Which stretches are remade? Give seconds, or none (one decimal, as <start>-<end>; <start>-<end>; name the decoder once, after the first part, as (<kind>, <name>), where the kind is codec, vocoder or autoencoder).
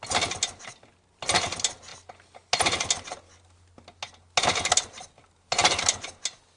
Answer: none